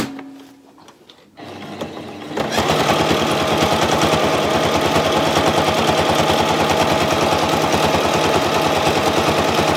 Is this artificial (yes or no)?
no